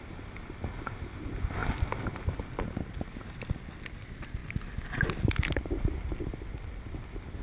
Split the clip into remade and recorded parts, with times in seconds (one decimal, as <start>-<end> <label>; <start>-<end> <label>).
0.0-7.4 recorded